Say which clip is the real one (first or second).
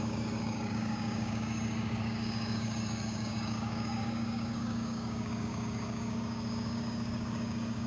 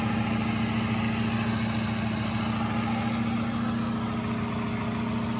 second